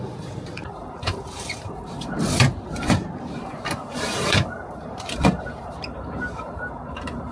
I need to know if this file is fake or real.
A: fake